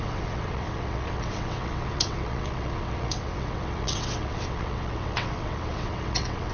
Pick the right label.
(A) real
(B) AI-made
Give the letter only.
B